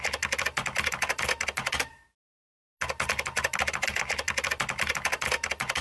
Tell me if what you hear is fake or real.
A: real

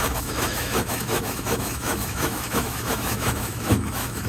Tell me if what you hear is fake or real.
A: fake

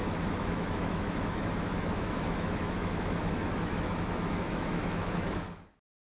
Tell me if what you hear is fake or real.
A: fake